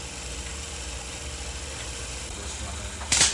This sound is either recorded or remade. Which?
recorded